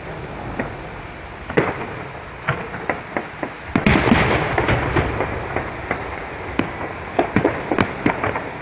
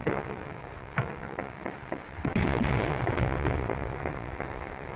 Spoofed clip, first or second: second